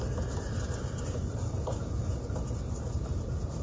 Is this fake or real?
fake